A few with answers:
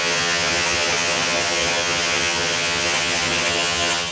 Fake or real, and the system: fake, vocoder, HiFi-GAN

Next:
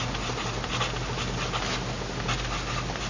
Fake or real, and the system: real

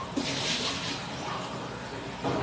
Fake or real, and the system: real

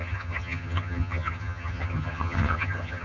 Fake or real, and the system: fake, vocoder, HiFi-GAN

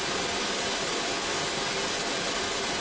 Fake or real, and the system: real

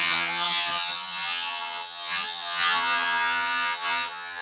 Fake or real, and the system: fake, vocoder, HiFi-GAN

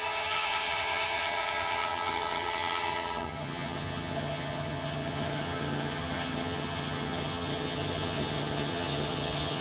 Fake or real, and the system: fake, vocoder, HiFi-GAN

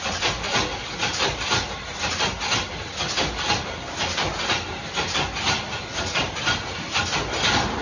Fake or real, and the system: real